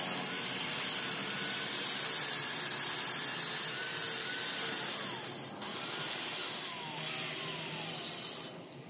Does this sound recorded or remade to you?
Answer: recorded